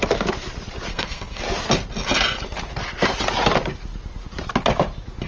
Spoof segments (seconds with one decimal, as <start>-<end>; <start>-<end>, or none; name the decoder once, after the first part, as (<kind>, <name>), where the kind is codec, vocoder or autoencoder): 0.9-1.4 (codec, SNAC)